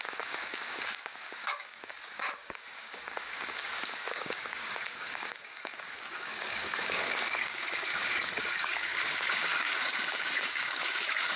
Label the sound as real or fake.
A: fake